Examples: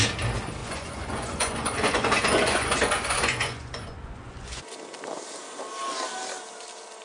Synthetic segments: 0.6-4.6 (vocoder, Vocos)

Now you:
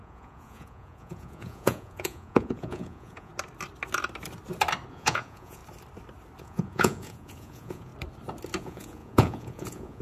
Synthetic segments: 0.0-3.3 (vocoder, Vocos); 4.9-5.6; 6.4-7.9; 8.6-10.0